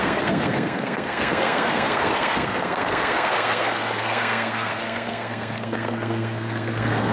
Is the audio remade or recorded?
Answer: remade